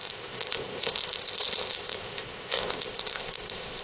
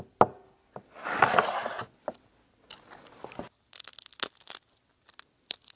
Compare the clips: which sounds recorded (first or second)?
second